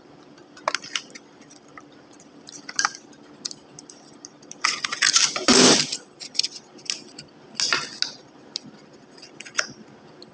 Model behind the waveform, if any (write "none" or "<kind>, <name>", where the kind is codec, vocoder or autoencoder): none